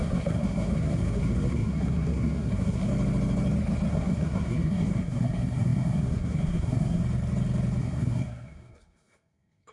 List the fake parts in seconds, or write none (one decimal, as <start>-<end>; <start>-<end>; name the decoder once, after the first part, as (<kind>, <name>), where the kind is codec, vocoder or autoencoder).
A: 0.0-2.9 (codec, SNAC); 3.9-7.0; 7.8-9.7